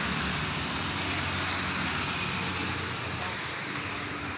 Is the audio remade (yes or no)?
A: no